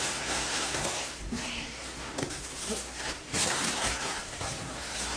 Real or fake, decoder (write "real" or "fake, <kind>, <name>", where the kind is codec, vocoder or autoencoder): fake, codec, SNAC